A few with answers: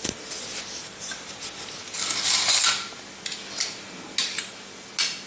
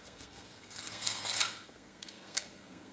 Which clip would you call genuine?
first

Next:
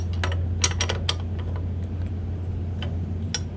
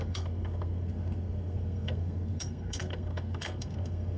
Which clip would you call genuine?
first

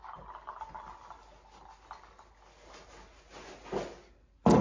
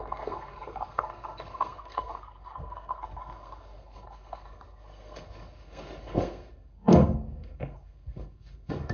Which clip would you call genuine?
first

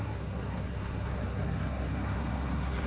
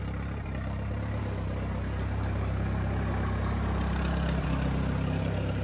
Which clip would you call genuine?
second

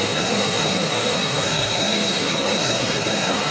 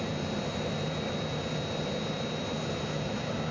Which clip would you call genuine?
second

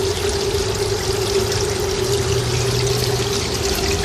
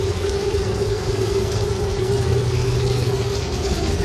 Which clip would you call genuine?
first